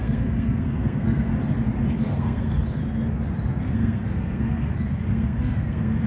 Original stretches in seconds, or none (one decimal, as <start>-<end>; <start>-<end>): 1.3-1.9; 2.8-3.6